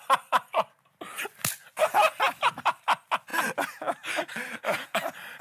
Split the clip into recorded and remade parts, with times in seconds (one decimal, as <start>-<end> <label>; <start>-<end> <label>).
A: 0.0-5.4 recorded